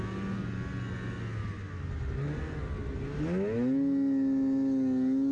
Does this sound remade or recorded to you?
recorded